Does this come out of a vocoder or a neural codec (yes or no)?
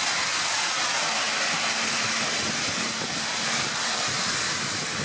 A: no